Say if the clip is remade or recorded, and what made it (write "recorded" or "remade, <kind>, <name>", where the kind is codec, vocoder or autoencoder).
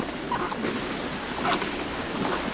recorded